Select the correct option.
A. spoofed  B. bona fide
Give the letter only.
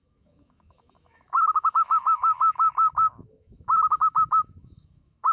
A